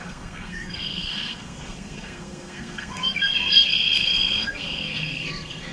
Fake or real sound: fake